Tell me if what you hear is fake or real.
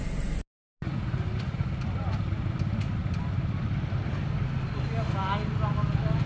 real